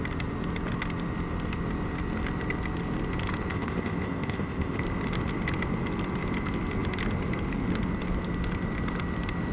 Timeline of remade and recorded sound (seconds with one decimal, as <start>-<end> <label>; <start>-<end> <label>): 0.0-3.5 recorded; 3.5-4.8 remade; 4.8-9.5 recorded